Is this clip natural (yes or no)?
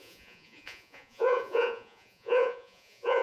no